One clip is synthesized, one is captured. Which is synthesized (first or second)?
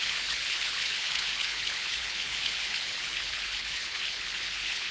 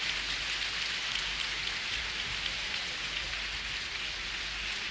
first